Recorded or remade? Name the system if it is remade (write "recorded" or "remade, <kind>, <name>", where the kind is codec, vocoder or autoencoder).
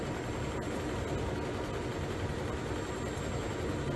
recorded